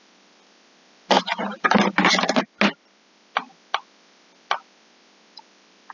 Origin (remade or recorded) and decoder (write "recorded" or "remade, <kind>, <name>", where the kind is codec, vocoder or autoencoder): recorded